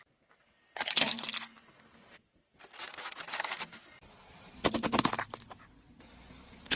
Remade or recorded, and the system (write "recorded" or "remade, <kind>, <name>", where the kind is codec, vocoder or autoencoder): recorded